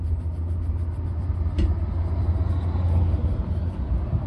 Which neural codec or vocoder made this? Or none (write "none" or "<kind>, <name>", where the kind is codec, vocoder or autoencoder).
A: none